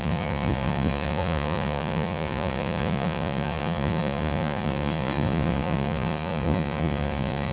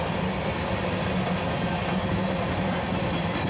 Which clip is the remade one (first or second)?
first